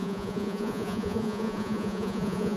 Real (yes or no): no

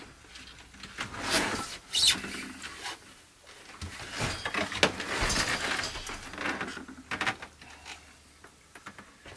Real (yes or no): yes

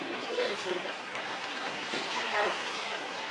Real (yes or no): no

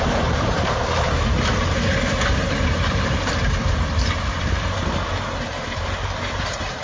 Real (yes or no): no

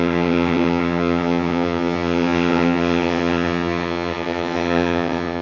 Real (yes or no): no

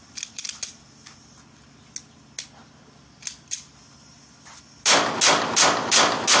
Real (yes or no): yes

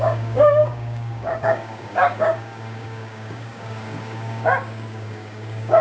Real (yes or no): no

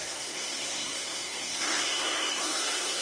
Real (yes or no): no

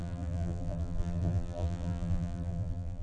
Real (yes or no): no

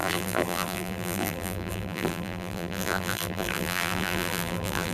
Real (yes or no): no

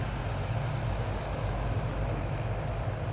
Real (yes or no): yes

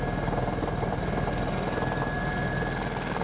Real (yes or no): yes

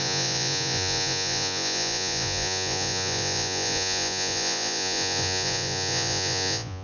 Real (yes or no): no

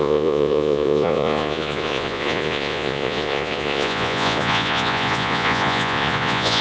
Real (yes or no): no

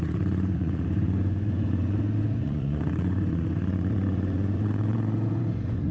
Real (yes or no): no